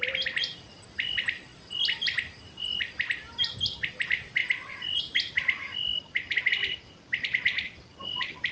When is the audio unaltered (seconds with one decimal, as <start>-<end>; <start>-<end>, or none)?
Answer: none